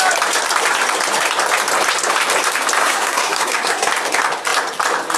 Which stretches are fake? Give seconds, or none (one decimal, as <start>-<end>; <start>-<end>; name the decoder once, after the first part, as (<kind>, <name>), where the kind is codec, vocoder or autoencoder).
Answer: 2.8-3.9 (codec, SNAC)